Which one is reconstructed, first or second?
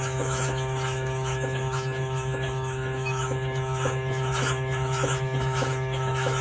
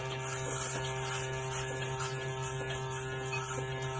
first